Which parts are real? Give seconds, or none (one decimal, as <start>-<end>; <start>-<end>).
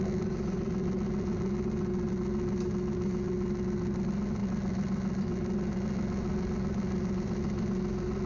0.0-8.3